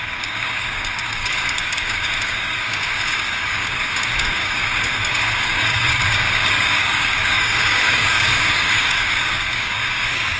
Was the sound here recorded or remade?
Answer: remade